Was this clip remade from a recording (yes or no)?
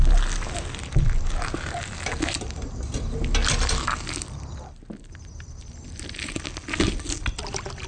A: no